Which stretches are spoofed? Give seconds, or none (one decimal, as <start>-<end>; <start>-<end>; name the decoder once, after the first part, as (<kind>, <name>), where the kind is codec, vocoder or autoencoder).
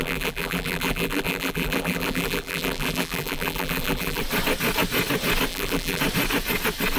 0.0-4.2 (vocoder, BigVGAN v2); 5.5-6.0